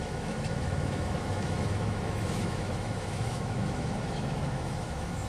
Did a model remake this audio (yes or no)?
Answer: yes